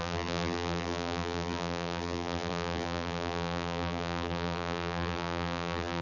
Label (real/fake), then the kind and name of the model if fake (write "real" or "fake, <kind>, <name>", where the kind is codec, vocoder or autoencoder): fake, vocoder, BigVGAN v2